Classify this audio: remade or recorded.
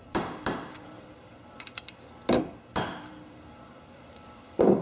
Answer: remade